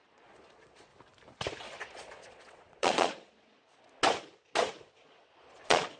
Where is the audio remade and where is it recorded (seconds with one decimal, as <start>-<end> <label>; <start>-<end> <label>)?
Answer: 0.0-0.9 remade; 0.9-1.6 recorded; 1.6-3.5 remade; 3.5-4.8 recorded; 4.8-6.0 remade